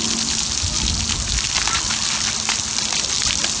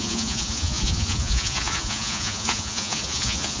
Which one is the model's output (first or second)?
second